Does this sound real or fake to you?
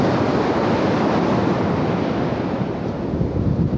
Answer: real